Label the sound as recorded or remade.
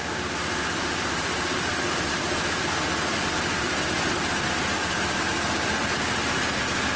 recorded